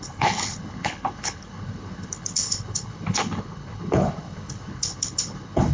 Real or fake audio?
fake